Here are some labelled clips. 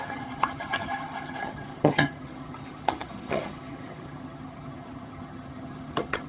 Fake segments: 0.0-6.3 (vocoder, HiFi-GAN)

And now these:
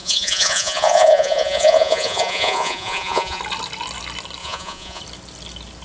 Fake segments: 0.0-3.4 (vocoder, Vocos); 4.4-5.0